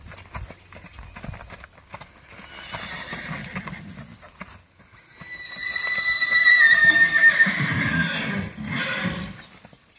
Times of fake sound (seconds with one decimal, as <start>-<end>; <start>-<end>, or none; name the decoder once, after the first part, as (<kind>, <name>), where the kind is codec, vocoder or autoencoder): 6.8-7.7 (codec, DAC)